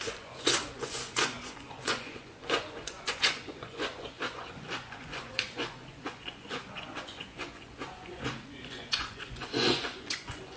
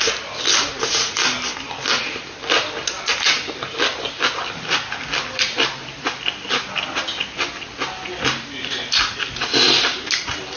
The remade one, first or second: first